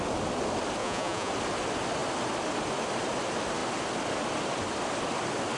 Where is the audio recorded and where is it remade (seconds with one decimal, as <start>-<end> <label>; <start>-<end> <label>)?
0.0-0.8 recorded; 0.8-1.3 remade; 1.3-5.6 recorded